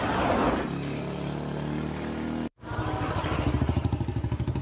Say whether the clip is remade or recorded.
recorded